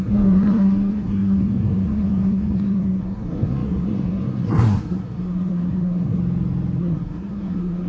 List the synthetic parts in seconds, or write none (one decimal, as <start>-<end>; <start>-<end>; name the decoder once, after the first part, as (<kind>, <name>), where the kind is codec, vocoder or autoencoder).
0.0-6.2 (codec, SNAC); 6.8-7.9